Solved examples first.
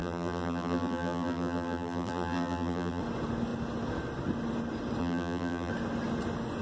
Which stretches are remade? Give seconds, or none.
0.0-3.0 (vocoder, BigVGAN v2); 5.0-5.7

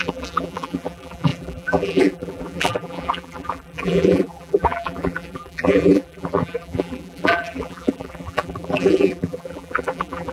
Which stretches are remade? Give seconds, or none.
0.0-10.3 (vocoder, BigVGAN v2)